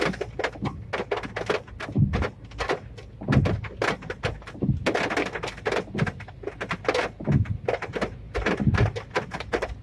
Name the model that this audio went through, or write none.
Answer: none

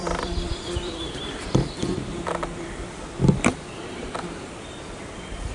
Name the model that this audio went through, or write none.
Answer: vocoder, BigVGAN v2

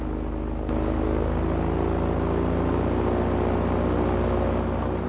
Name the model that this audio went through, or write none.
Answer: none